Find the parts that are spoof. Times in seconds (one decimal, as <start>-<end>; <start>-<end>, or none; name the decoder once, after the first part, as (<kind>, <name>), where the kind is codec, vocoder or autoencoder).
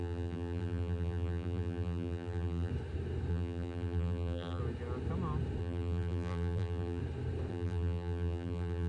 0.0-2.7 (vocoder, BigVGAN v2); 3.3-4.6; 5.6-7.0; 7.5-8.9